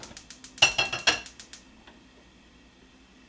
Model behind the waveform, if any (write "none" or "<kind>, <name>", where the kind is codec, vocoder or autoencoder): none